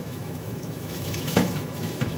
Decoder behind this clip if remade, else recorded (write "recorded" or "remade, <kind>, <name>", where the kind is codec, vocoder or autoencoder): remade, autoencoder, DAC-VAE